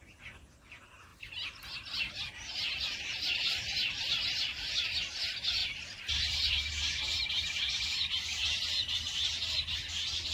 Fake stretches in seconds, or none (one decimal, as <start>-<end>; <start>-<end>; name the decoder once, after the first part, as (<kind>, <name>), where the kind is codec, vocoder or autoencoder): 1.1-4.7 (vocoder, BigVGAN v2); 5.6-6.6